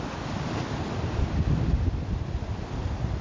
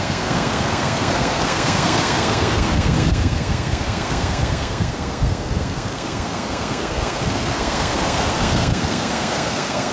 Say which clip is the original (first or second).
first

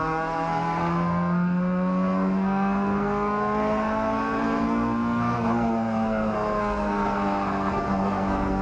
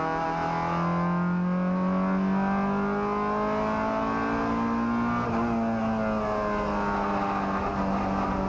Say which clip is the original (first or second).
second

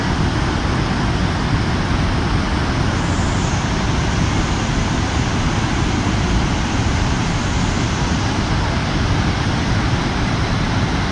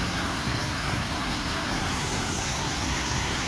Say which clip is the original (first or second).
first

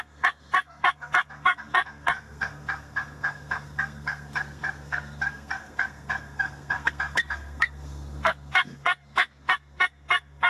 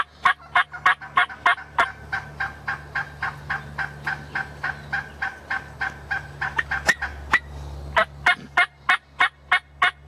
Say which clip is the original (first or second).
second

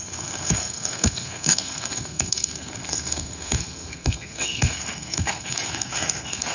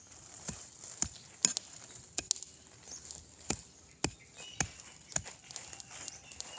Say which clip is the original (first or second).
second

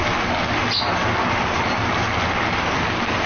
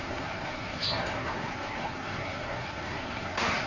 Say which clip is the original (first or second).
first